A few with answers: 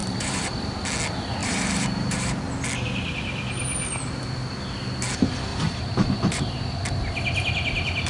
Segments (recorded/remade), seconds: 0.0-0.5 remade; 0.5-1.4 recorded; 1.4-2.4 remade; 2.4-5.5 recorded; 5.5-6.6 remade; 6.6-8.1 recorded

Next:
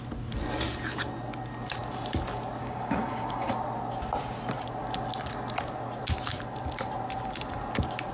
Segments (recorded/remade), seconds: 0.0-2.6 recorded; 2.6-3.5 remade; 3.5-8.1 recorded

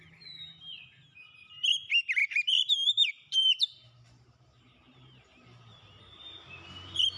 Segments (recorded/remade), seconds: 0.0-2.2 recorded; 2.2-6.0 remade; 6.0-7.2 recorded

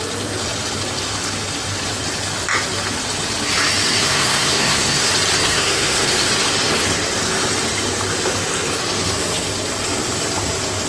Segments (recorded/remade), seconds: 0.0-4.0 recorded; 4.0-5.1 remade; 5.1-5.5 recorded; 5.5-6.1 remade; 6.1-10.9 recorded